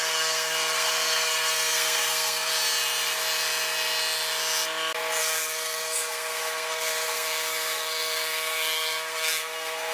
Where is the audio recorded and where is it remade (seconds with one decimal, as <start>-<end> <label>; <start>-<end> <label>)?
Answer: 0.0-2.5 remade; 2.5-5.2 recorded; 5.2-9.9 remade